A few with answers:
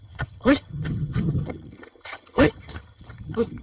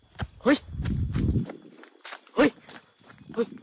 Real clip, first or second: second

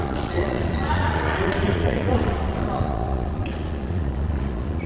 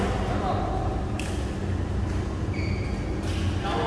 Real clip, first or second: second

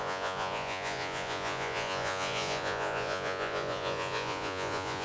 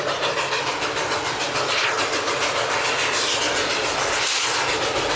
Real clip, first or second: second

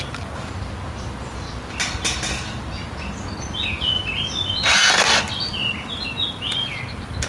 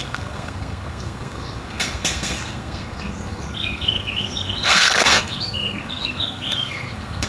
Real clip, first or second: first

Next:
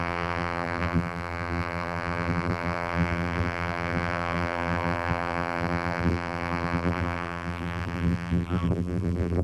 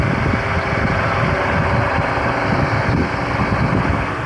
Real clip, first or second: second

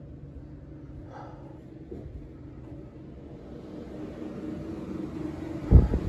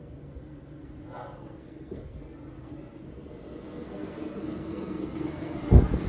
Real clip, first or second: first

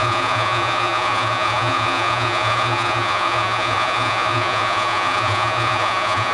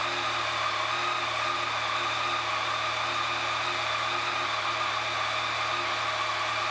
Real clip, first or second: second